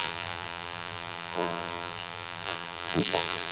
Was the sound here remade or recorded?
remade